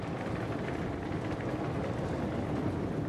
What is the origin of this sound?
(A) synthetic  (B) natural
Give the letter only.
B